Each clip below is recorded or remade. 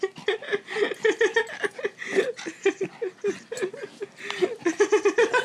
recorded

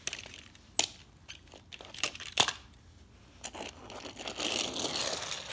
recorded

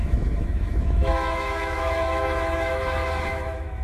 remade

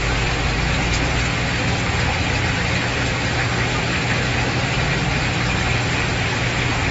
recorded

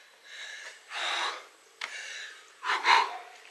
recorded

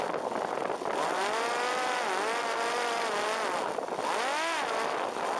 recorded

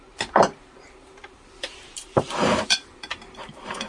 remade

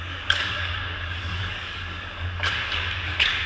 remade